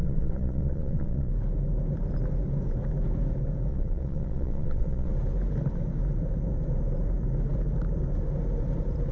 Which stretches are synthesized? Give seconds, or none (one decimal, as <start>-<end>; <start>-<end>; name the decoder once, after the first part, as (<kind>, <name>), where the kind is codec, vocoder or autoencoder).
0.0-1.3 (vocoder, Vocos); 3.7-5.1